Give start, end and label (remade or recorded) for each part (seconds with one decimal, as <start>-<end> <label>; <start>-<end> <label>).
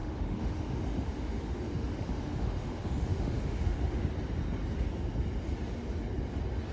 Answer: 0.0-4.0 remade; 4.0-6.7 recorded